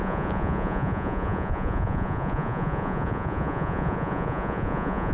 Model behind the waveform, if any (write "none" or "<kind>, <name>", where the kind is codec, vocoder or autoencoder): vocoder, Vocos